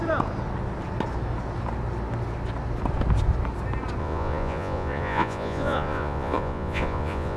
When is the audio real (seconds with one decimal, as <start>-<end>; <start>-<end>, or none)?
0.0-4.0